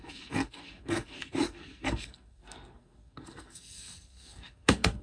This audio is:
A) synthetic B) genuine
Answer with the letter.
A